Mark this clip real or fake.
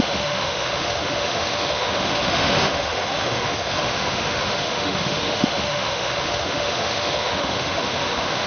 fake